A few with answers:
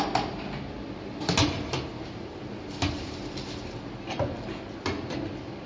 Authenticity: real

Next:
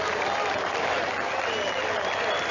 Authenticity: fake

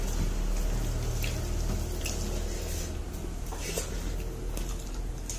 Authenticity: real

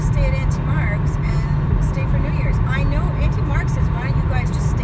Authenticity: real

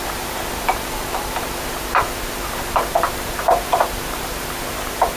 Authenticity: fake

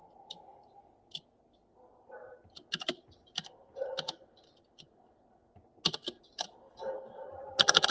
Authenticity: real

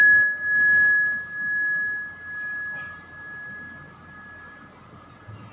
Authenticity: real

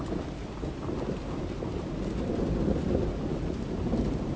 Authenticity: real